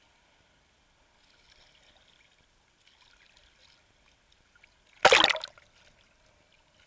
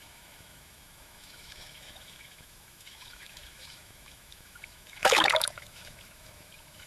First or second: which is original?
first